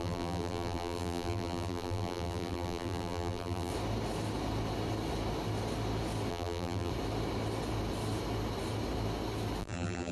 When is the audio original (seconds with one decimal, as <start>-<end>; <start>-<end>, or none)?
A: 3.7-6.3; 6.9-9.6

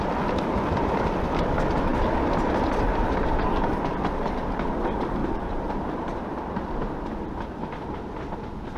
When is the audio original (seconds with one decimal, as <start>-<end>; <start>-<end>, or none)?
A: 0.0-5.2; 6.4-8.8

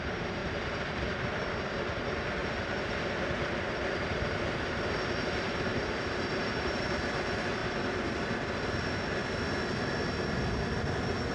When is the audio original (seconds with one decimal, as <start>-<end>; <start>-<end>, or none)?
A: 0.0-0.4; 1.2-2.4; 6.9-11.3

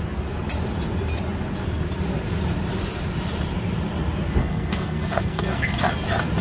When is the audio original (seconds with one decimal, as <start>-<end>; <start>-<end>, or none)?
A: 0.0-4.4; 5.9-6.4

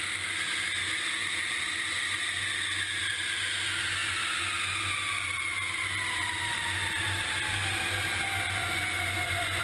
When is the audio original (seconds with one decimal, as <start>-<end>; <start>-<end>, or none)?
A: 0.0-8.6